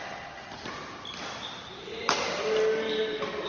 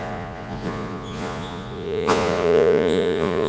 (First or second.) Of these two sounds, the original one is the first